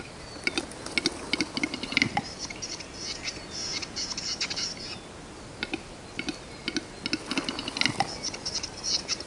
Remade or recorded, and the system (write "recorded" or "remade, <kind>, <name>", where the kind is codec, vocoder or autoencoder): recorded